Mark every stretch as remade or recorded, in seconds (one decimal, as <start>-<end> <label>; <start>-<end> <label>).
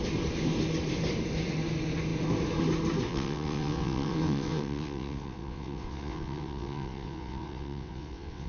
0.0-3.1 recorded; 3.1-8.5 remade